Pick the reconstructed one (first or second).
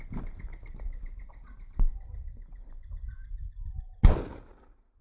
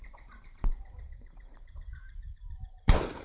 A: second